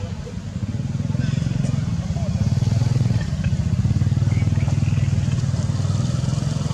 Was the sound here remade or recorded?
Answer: recorded